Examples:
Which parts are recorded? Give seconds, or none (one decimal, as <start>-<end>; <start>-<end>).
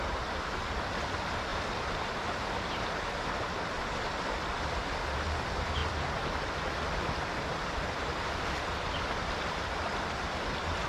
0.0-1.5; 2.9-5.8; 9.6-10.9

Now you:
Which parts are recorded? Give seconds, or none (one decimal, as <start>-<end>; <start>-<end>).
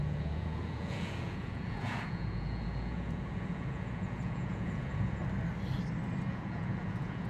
5.2-6.3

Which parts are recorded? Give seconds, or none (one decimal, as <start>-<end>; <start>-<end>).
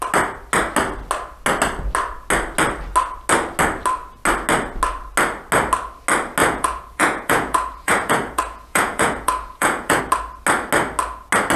0.0-6.4; 10.0-11.6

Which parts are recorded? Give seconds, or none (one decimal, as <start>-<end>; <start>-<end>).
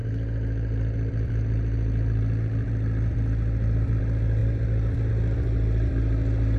0.0-6.6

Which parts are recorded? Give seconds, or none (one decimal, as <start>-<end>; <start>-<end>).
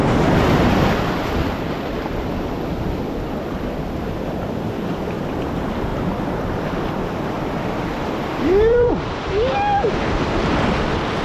0.0-5.9; 8.9-11.2